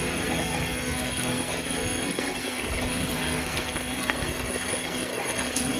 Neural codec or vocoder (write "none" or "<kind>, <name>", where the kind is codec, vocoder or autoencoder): codec, SNAC